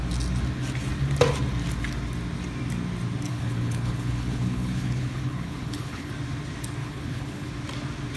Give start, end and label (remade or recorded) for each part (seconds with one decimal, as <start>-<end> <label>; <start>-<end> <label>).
0.0-3.3 recorded; 3.3-6.1 remade; 6.1-6.8 recorded; 6.8-7.5 remade; 7.5-8.2 recorded